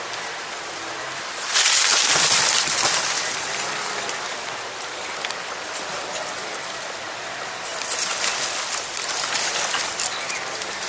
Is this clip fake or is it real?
real